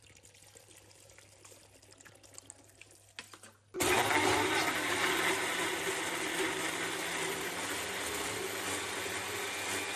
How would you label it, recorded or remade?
recorded